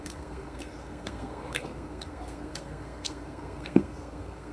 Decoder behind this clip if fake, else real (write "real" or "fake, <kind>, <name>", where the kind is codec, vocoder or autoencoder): fake, codec, SNAC